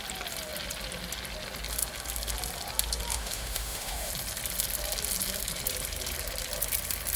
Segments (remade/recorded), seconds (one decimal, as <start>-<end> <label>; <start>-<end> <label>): 0.0-3.1 recorded; 3.1-4.1 remade; 4.1-7.2 recorded